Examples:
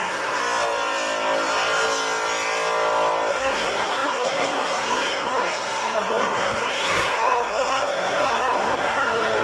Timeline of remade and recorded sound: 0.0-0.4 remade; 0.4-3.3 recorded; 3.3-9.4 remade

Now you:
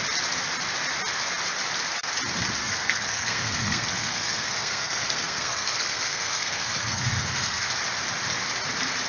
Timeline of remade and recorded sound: 0.0-2.6 recorded; 2.6-7.7 remade; 7.7-9.1 recorded

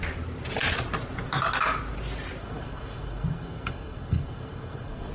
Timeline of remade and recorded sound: 0.0-2.4 recorded; 2.4-5.1 remade

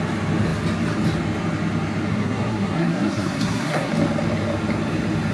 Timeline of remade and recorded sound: 0.0-2.1 recorded; 2.1-3.9 remade; 3.9-5.3 recorded

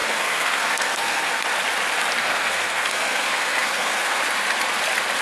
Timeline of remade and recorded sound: 0.0-1.4 remade; 1.4-2.2 recorded; 2.2-4.2 remade; 4.2-5.2 recorded